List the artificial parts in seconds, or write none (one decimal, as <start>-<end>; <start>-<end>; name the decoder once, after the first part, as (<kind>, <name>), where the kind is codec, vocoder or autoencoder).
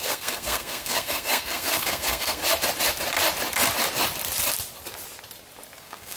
0.0-2.4 (codec, SNAC); 5.8-6.2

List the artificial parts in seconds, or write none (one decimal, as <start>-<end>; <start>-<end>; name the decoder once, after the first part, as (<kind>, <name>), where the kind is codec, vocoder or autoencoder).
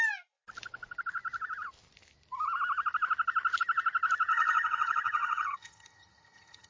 4.3-6.7 (vocoder, HiFi-GAN)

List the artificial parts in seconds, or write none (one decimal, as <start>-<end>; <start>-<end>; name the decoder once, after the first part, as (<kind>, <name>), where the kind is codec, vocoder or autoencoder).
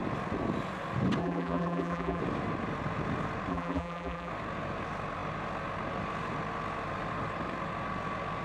1.2-2.2 (vocoder, BigVGAN v2); 3.5-4.3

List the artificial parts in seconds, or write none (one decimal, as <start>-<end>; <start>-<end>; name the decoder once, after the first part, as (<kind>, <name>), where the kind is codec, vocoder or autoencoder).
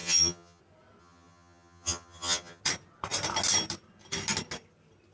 0.0-0.6 (vocoder, HiFi-GAN); 1.0-2.6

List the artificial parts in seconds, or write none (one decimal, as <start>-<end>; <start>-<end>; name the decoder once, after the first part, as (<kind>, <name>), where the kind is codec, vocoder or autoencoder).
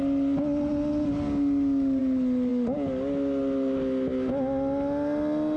none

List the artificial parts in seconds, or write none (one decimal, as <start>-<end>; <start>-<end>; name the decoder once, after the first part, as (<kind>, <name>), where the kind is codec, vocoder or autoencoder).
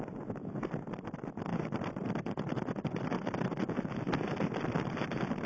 none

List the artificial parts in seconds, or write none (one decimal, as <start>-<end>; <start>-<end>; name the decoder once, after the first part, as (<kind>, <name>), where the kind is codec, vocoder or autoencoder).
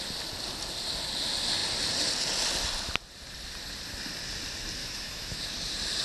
4.8-5.4 (autoencoder, DAC-VAE)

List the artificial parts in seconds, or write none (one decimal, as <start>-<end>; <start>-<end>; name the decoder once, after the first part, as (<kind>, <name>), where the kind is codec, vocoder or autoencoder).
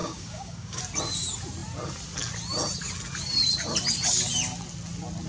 0.0-0.8 (codec, DAC)